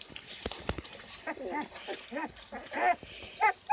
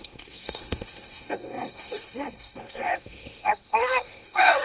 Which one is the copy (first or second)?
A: second